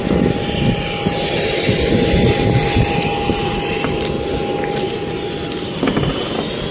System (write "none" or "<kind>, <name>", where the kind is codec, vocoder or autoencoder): none